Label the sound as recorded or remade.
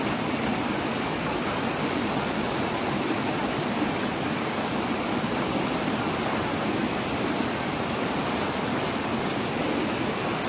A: recorded